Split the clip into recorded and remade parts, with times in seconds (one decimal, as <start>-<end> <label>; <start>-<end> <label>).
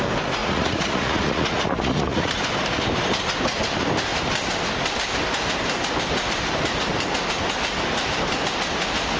0.0-0.4 recorded; 0.4-2.4 remade; 2.4-9.2 recorded